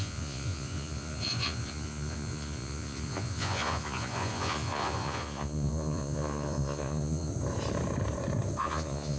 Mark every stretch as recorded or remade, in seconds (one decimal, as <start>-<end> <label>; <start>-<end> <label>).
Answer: 0.0-7.3 remade; 7.3-8.6 recorded; 8.6-9.2 remade